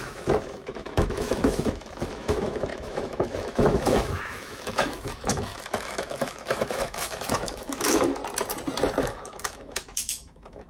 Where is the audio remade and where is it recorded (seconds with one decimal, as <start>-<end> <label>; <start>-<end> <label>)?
0.0-8.2 remade; 8.2-9.0 recorded; 9.0-10.7 remade